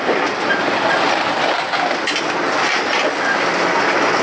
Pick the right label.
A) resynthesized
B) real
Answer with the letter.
B